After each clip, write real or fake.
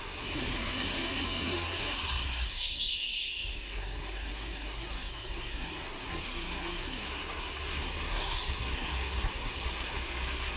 fake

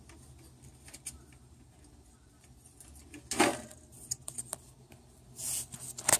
real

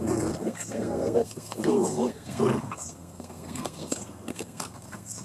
fake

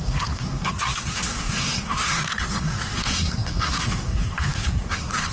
fake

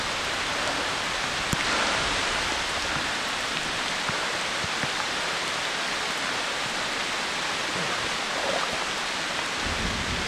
real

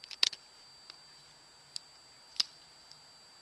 real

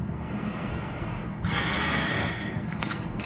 fake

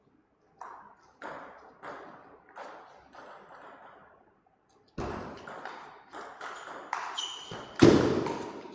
real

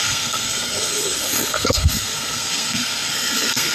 fake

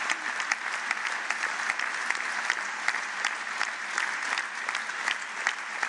real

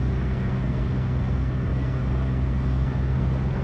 fake